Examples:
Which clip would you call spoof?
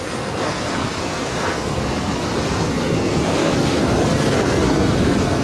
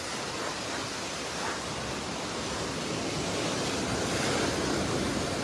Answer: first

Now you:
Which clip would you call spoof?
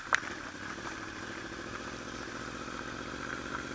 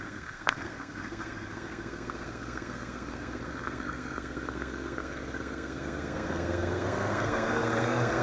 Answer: second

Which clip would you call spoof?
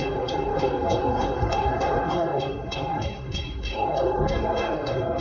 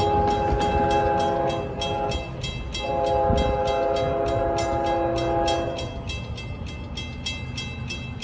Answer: first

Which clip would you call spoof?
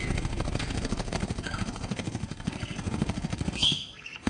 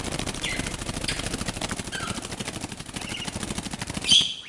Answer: first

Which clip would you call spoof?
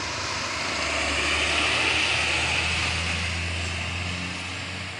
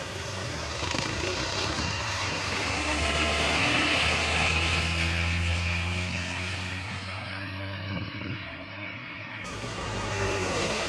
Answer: second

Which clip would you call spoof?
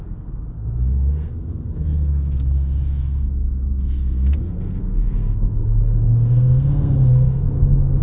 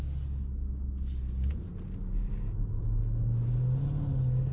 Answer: first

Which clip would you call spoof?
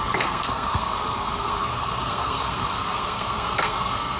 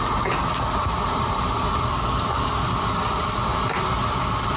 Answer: first